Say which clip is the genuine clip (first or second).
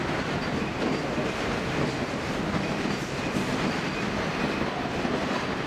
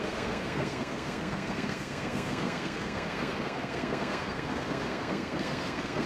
first